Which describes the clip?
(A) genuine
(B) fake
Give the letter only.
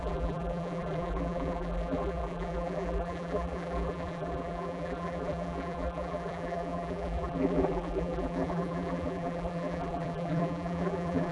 B